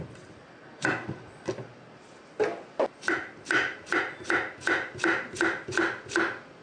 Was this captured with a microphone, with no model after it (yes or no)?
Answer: yes